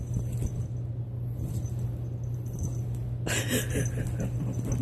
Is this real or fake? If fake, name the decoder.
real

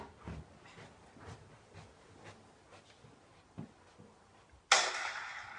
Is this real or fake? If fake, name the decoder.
real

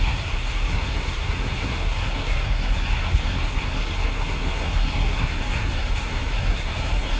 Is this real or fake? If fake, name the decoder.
fake, codec, SNAC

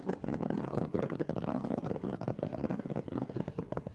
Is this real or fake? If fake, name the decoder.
fake, codec, SNAC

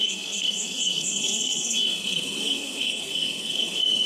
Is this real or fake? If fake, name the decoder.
fake, codec, SNAC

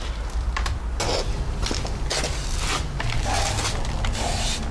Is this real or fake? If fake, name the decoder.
real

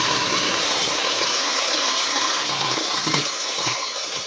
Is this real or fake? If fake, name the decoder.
fake, codec, SNAC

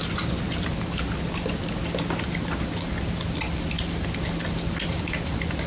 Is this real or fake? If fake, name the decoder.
real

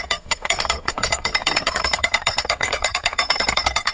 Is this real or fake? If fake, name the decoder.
fake, codec, SNAC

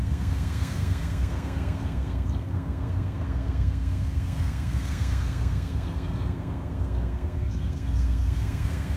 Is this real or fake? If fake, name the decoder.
fake, codec, SNAC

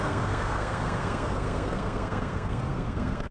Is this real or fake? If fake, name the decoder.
fake, codec, SNAC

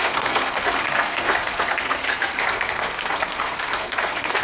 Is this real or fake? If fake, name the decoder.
fake, codec, SNAC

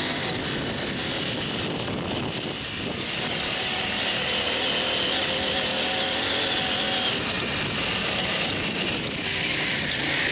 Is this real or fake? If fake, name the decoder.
real